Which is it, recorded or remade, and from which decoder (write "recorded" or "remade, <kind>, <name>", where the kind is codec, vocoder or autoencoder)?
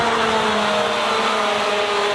recorded